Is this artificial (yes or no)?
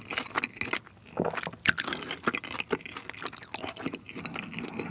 no